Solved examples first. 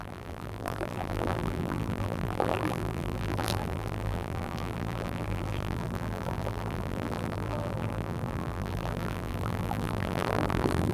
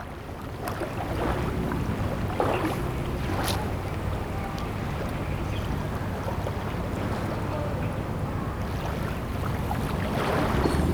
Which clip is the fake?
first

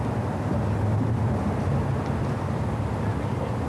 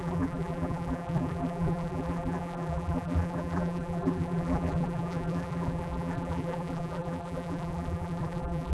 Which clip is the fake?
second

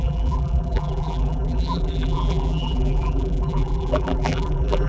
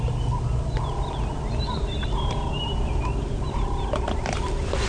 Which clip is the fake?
first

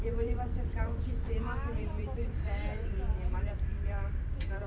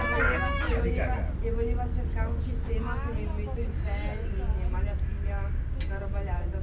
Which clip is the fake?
first